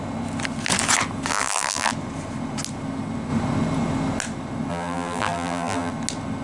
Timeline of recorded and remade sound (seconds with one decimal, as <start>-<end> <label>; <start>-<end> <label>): 0.0-1.3 recorded; 1.3-1.9 remade; 1.9-4.7 recorded; 4.7-5.9 remade; 5.9-6.4 recorded